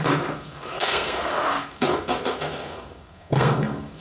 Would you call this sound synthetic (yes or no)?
yes